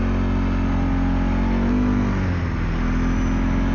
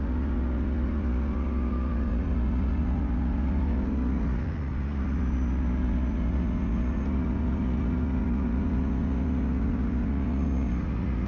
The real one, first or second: first